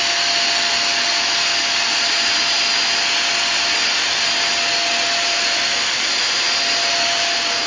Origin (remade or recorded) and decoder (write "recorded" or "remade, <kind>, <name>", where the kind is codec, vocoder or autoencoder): recorded